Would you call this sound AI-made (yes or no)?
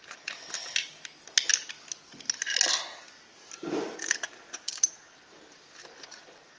no